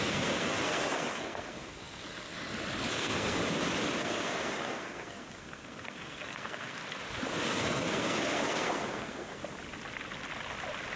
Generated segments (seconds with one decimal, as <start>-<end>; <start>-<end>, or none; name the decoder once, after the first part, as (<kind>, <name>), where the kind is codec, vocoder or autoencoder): 0.0-2.3 (codec, SNAC); 2.9-3.4; 4.0-6.8; 7.3-9.4